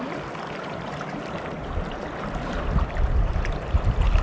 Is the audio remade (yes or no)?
no